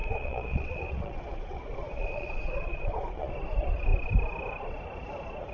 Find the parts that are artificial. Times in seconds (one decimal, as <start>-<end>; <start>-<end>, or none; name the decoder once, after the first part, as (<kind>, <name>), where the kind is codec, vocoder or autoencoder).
0.0-3.3 (vocoder, Vocos)